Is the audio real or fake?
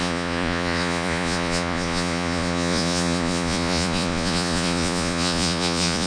fake